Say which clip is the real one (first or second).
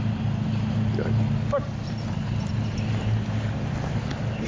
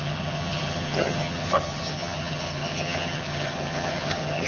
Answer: first